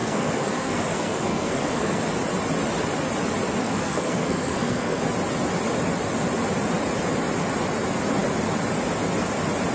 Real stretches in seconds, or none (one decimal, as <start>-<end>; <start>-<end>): 2.0-3.6; 5.0-9.7